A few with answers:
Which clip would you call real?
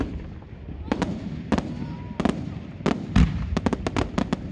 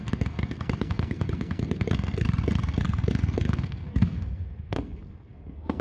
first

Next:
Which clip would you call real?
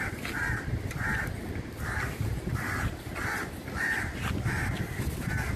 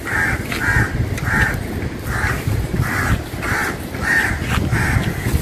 second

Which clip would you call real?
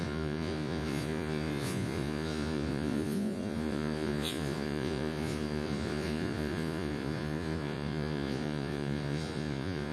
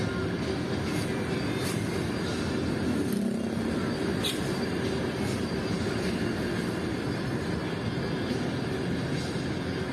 second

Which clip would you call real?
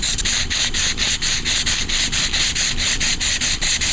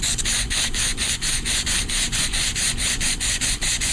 first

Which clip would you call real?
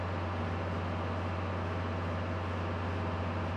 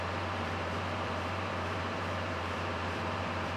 first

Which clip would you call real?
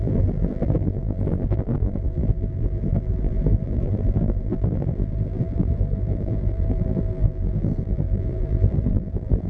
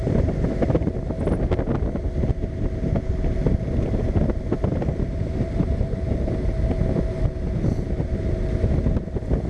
second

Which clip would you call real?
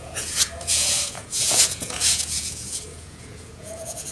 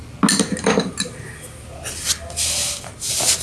second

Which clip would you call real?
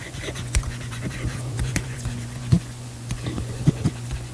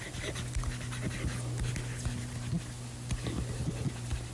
second